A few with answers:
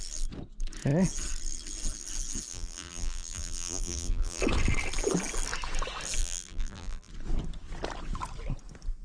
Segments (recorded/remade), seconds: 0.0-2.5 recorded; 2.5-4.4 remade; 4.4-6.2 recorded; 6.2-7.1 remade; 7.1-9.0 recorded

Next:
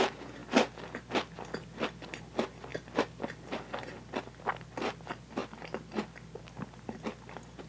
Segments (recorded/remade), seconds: 0.0-7.7 recorded